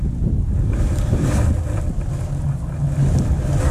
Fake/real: real